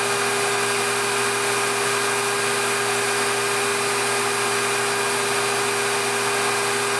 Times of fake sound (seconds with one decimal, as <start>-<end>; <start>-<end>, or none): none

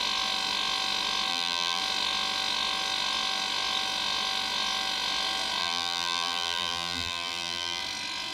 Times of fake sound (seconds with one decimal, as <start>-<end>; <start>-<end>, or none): 1.3-1.8; 5.6-7.8

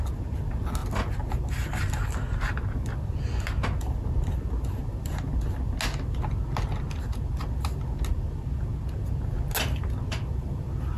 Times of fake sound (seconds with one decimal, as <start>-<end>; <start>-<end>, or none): none

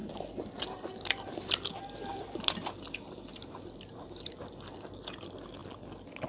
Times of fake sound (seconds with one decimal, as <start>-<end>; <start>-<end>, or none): 2.1-4.4

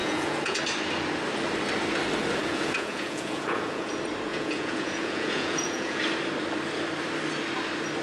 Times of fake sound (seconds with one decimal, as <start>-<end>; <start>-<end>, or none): 0.0-0.6; 2.4-3.9; 4.3-6.0

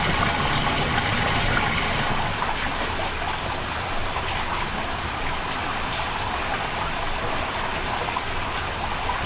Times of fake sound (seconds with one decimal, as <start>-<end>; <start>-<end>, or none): none

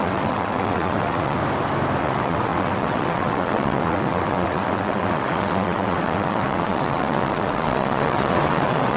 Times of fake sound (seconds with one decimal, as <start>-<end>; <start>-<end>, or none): 0.0-1.4; 2.0-9.0

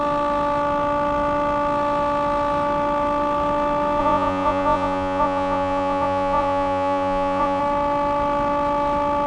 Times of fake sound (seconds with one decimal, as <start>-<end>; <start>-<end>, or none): 4.0-7.6